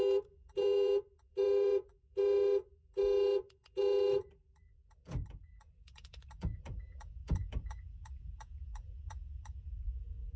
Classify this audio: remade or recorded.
remade